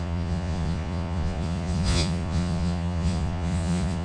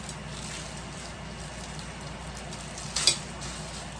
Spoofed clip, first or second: first